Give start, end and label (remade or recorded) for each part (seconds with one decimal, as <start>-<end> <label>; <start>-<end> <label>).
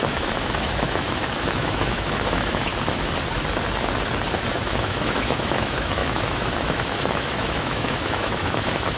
0.0-2.7 remade; 2.7-4.5 recorded; 4.5-9.0 remade